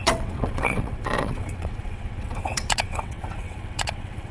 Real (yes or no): no